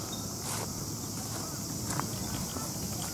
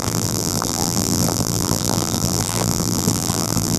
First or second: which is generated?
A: second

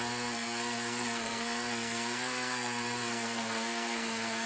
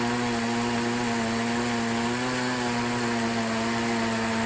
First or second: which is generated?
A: first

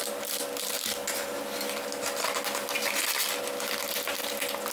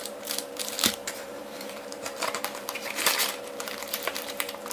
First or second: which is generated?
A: second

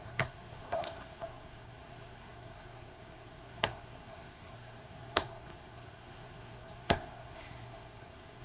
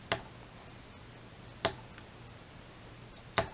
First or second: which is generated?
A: first